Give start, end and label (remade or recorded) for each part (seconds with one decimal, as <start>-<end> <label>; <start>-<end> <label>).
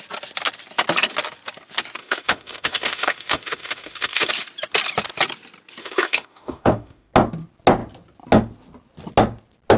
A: 0.0-2.0 recorded; 2.0-4.3 remade; 4.3-5.8 recorded; 5.8-7.1 remade; 7.1-9.8 recorded